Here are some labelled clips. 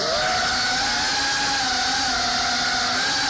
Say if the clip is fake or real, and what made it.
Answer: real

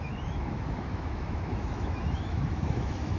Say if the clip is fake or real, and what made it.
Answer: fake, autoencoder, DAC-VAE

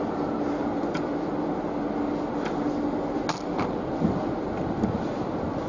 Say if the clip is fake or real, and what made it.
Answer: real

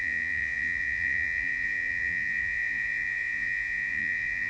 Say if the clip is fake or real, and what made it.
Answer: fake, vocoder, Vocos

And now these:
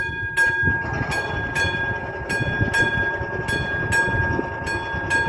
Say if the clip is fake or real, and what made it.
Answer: real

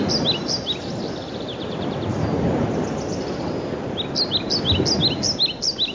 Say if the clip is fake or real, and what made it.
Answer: real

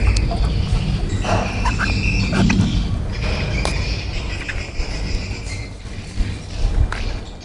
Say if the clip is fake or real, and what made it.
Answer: real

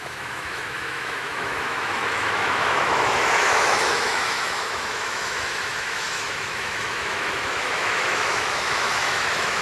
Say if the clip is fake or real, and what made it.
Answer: fake, autoencoder, DAC-VAE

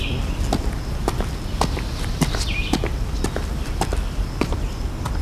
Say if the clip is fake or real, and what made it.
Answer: real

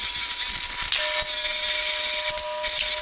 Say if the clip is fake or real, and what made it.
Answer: real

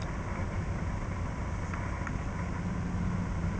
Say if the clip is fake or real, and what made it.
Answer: real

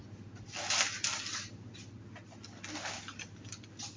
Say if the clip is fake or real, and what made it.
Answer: real